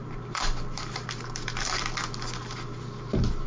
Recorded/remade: recorded